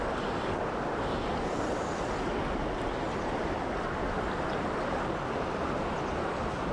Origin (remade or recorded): recorded